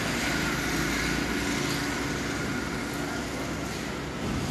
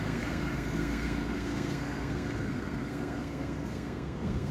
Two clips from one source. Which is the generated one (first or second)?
second